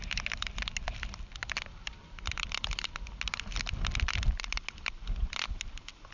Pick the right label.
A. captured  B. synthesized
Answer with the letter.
A